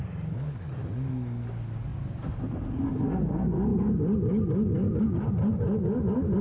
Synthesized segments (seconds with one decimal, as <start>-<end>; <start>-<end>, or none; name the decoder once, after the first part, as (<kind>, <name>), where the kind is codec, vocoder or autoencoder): 1.9-2.4 (vocoder, BigVGAN v2)